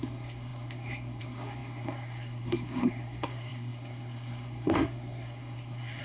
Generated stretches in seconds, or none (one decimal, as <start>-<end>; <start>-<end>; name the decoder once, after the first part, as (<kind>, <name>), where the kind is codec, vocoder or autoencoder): 0.0-6.0 (codec, SNAC)